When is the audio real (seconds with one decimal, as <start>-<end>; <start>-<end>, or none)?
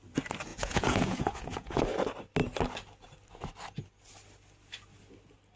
0.0-0.5; 1.8-5.6